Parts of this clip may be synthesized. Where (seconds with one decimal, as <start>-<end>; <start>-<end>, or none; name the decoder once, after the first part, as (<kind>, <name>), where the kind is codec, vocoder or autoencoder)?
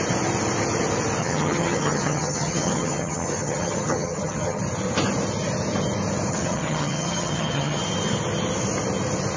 1.2-4.6 (vocoder, HiFi-GAN); 6.3-7.8